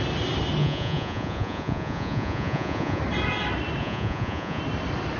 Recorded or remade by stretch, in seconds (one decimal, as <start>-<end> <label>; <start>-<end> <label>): 0.0-0.6 recorded; 0.6-3.0 remade; 3.0-3.8 recorded; 3.8-4.6 remade; 4.6-5.2 recorded

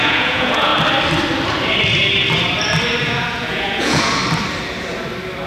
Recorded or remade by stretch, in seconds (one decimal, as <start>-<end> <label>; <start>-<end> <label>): 0.0-0.7 remade; 0.7-3.0 recorded; 3.0-4.2 remade; 4.2-5.5 recorded

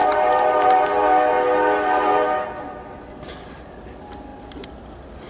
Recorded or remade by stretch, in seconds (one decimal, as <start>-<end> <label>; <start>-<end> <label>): 0.0-0.9 remade; 0.9-5.3 recorded

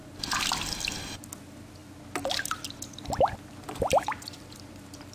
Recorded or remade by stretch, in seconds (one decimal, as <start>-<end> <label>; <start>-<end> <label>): 0.0-5.1 recorded

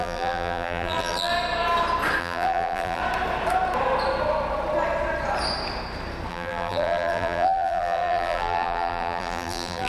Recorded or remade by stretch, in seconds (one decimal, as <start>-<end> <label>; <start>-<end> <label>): 0.0-1.3 remade; 1.3-2.2 recorded; 2.2-3.0 remade; 3.0-6.3 recorded; 6.3-9.9 remade